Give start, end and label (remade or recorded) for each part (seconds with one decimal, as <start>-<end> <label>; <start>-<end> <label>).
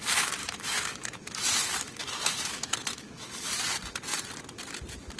0.0-0.4 recorded; 0.4-3.5 remade; 3.5-5.2 recorded